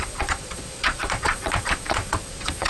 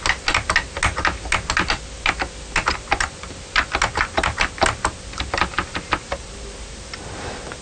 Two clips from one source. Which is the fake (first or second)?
first